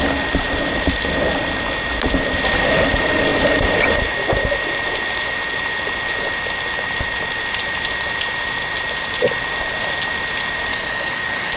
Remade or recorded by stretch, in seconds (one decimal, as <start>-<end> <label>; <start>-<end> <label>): 0.0-10.7 recorded; 10.7-11.6 remade